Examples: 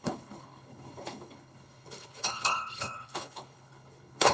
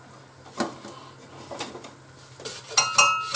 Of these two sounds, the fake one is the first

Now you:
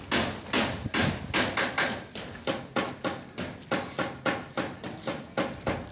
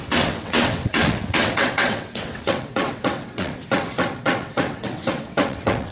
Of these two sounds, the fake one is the second